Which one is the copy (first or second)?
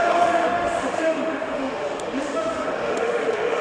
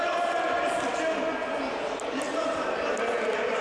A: first